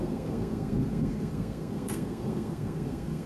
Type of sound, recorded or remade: remade